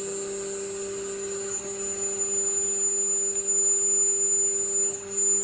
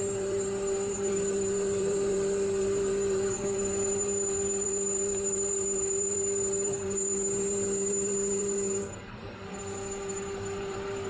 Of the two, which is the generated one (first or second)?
second